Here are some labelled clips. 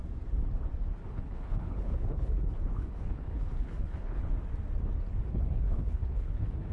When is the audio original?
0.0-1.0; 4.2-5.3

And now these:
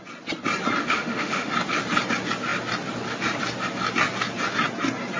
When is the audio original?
0.0-0.8; 1.5-5.2

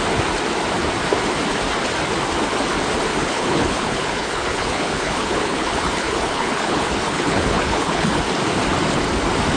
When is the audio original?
0.0-3.1; 8.2-9.6

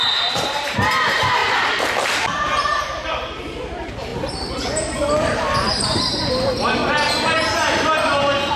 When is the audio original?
4.1-5.7; 6.8-7.5

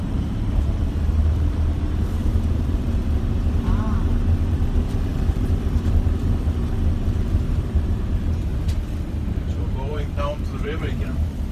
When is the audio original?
8.5-9.7

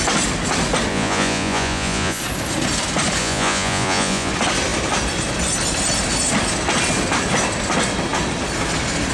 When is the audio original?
0.0-0.9; 2.2-3.2; 4.3-9.1

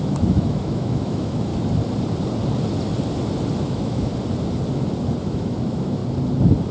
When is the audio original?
1.5-3.6; 4.1-5.2; 6.0-6.7